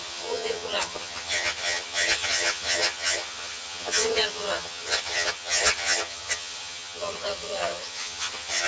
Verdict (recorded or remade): remade